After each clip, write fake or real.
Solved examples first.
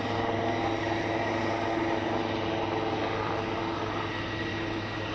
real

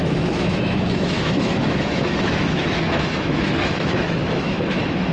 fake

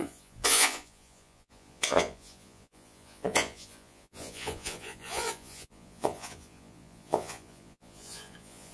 fake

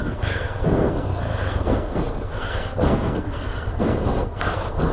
fake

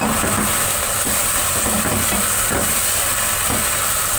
fake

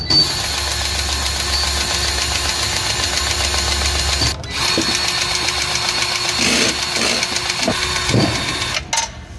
real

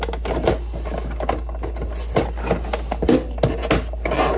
real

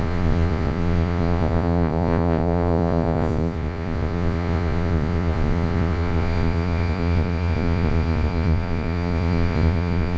fake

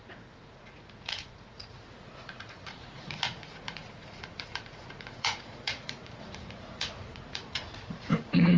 fake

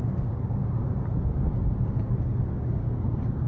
fake